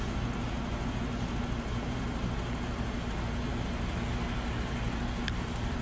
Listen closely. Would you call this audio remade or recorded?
recorded